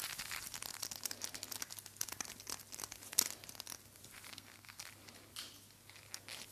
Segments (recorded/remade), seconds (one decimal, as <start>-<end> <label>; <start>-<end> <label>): 0.0-4.3 recorded; 4.3-4.8 remade; 4.8-6.5 recorded